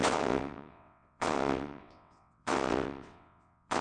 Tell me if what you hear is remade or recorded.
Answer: remade